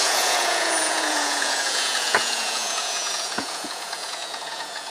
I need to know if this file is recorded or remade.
remade